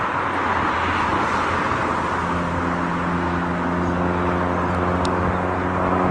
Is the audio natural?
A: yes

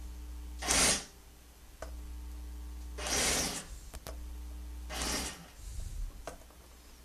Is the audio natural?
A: yes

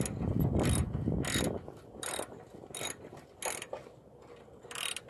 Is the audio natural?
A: yes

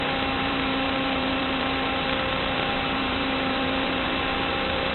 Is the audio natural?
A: no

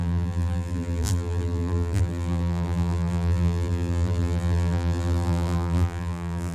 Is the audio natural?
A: no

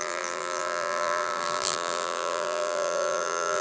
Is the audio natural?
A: no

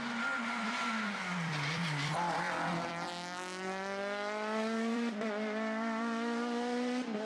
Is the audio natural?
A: no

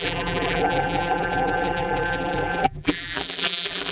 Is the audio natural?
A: no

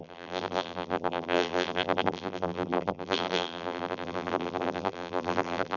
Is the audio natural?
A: no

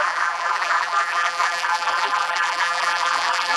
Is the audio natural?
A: no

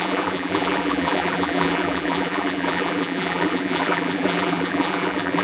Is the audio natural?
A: no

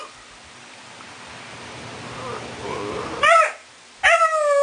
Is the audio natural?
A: yes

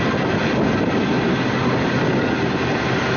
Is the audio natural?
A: yes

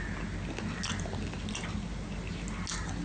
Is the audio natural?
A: yes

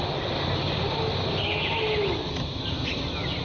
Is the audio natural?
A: yes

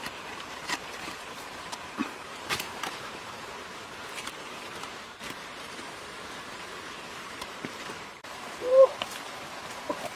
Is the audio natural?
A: no